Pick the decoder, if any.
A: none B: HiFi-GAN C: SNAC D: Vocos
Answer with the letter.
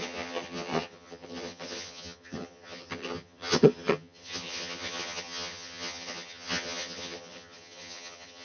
B